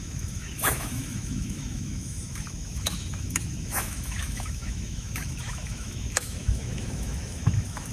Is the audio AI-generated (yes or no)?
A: yes